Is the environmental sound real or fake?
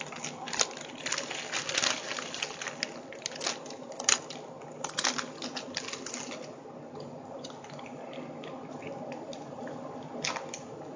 real